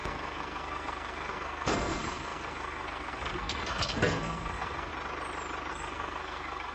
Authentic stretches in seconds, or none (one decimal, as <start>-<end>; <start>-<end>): 4.9-5.7